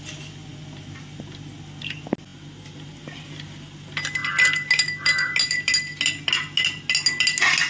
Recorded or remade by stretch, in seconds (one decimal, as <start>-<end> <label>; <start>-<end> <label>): 0.0-7.7 recorded